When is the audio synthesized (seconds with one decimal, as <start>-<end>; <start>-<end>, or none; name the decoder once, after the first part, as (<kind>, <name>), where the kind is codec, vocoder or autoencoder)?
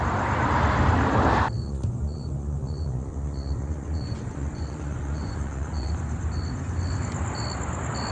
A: 1.6-5.9 (vocoder, Vocos)